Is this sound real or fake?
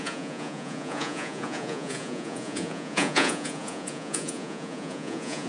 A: fake